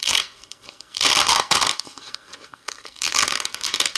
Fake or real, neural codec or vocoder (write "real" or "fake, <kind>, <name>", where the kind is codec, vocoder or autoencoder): fake, codec, SNAC